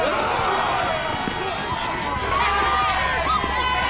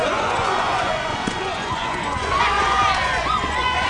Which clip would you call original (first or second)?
first